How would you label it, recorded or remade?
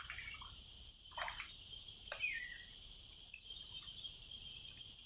remade